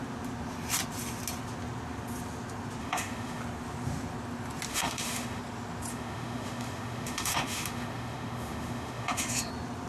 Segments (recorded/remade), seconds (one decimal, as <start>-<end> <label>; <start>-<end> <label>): 0.0-2.8 recorded; 2.8-3.4 remade; 3.4-4.7 recorded; 4.7-5.4 remade; 5.4-5.9 recorded; 5.9-9.5 remade; 9.5-9.9 recorded